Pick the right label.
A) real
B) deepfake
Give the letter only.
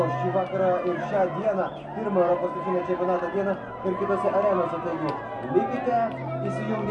A